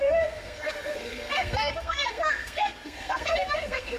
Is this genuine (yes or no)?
no